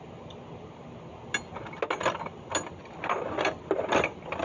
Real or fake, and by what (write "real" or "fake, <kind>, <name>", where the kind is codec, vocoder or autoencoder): real